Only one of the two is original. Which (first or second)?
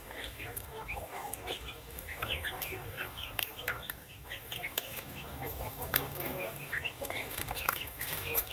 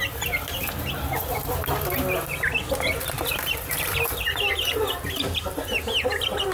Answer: second